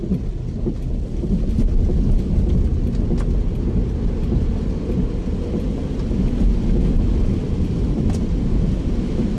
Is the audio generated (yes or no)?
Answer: no